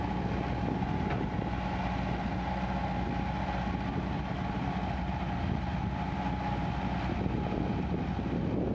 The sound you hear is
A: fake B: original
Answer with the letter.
B